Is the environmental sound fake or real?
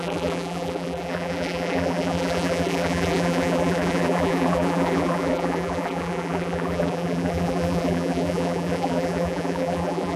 fake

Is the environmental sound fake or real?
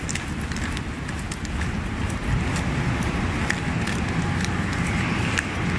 real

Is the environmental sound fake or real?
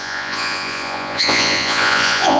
fake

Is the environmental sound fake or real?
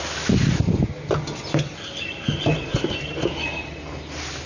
real